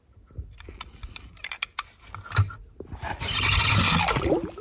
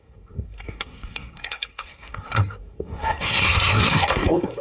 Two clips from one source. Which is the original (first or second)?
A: first